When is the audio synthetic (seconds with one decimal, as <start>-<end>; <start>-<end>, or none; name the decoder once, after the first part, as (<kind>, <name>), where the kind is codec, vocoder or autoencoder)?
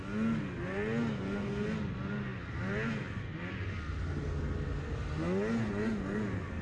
none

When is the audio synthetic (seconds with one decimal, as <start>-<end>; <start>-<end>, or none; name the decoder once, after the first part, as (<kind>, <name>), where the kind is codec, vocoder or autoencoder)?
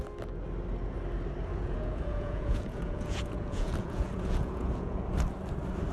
1.5-5.0 (vocoder, Vocos)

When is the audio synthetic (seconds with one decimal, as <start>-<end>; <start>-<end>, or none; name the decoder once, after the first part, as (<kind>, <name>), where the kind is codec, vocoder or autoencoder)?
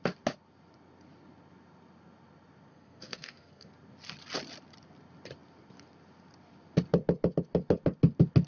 2.7-3.7 (codec, SNAC)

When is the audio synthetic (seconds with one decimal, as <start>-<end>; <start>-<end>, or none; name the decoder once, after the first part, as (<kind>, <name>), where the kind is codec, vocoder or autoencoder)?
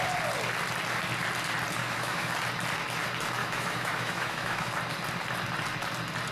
1.8-2.3 (autoencoder, DAC-VAE); 3.4-4.7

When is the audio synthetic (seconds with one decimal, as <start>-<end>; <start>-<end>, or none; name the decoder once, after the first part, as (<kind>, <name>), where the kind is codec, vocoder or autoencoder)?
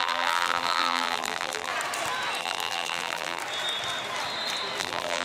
0.0-1.7 (vocoder, BigVGAN v2); 2.4-3.4; 4.8-5.2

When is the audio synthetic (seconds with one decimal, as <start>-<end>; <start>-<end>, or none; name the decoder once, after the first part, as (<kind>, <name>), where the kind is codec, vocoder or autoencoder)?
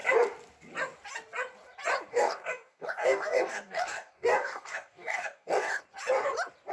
2.1-5.8 (codec, DAC)